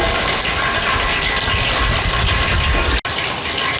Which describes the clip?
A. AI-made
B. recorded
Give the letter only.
B